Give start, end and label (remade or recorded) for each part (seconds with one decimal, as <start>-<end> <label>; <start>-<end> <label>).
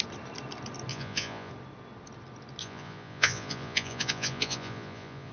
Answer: 0.0-0.9 recorded; 0.9-1.5 remade; 1.5-2.6 recorded; 2.6-5.3 remade